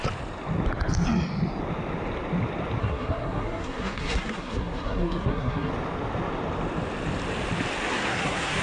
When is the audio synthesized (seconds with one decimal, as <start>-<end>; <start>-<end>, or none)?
2.8-5.7; 7.9-8.6